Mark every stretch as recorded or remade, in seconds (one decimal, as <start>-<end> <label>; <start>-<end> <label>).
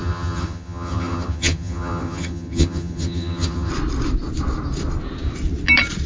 0.0-3.7 remade; 3.7-6.1 recorded